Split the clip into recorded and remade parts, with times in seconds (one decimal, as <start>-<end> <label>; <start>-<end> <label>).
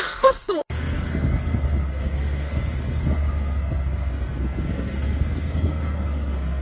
0.0-6.6 remade